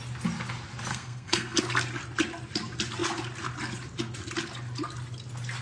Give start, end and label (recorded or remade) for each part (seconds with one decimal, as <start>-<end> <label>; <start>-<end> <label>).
0.0-0.9 recorded; 0.9-1.6 remade; 1.6-5.6 recorded